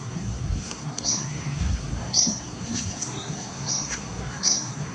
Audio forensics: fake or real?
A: fake